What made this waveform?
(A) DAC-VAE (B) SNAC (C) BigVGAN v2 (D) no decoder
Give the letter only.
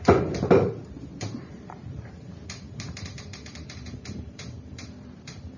C